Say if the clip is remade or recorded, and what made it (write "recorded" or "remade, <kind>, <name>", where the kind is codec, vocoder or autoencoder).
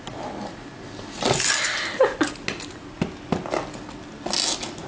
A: recorded